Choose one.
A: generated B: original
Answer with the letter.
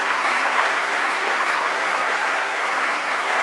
A